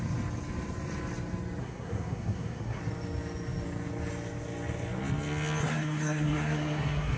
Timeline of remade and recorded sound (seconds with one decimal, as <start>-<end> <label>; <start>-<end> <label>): 0.0-1.6 recorded; 1.6-2.8 remade; 2.8-5.6 recorded; 5.6-7.2 remade